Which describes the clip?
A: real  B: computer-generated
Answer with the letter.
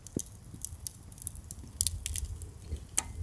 A